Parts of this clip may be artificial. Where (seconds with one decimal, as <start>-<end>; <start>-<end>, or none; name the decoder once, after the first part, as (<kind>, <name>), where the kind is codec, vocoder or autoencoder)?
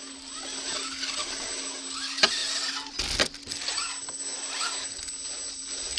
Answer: none